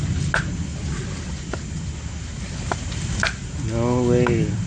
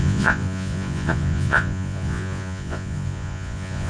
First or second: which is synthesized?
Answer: second